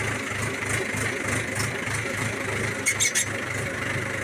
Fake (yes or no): no